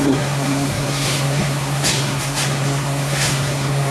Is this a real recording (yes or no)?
no